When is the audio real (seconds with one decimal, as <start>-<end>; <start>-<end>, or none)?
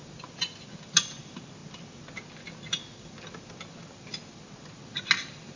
0.0-5.6